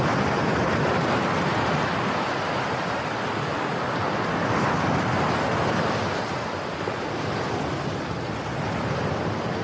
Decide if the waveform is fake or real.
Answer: real